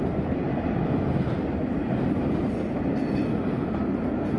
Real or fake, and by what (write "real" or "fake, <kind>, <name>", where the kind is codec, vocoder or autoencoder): real